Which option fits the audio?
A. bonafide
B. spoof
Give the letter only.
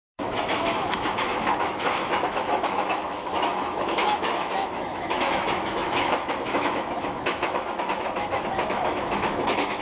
B